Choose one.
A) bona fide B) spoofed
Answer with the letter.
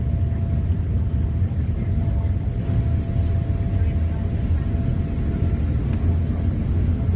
A